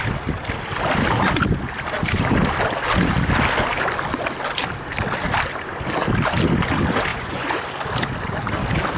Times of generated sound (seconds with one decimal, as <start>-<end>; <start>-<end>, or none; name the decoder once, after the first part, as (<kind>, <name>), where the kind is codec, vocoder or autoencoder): 7.1-7.6 (vocoder, Vocos)